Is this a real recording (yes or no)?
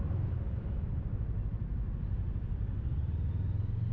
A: yes